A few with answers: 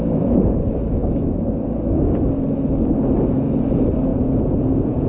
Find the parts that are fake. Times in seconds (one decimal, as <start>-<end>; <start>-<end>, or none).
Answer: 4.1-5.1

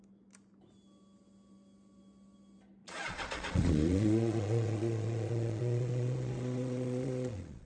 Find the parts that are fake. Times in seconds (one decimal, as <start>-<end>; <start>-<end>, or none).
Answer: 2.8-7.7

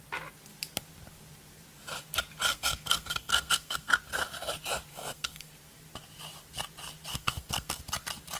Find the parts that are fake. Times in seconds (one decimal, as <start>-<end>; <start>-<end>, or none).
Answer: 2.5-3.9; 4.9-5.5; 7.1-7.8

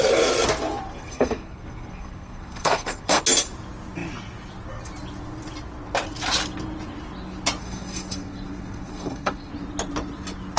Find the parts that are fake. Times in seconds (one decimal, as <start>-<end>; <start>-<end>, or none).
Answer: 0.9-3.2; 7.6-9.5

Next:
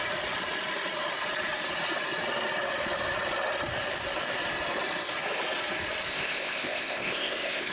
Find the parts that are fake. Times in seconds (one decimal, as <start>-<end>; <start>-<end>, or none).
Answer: 6.1-7.7